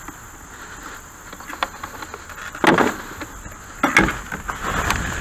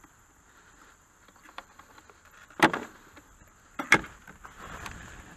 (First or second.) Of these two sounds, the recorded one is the first